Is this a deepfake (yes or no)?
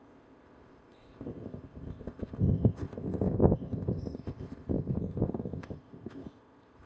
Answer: yes